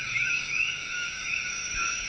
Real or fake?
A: fake